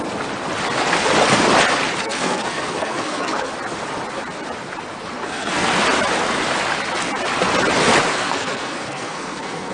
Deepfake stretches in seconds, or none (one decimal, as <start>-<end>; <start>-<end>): 2.0-3.5; 5.2-5.7; 8.1-9.7